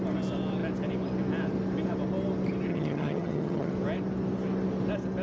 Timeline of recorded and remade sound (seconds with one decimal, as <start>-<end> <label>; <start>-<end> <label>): 0.0-2.7 recorded; 2.7-3.7 remade; 3.7-5.2 recorded